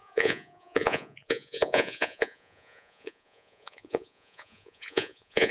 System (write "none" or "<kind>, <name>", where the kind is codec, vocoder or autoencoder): vocoder, Vocos